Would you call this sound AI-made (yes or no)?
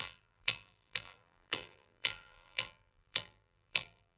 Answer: yes